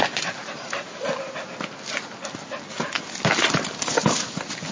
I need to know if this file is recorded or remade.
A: recorded